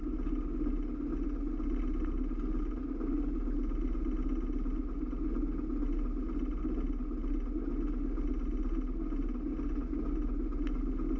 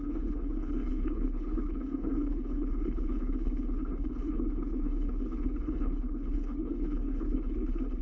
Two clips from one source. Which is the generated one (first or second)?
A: second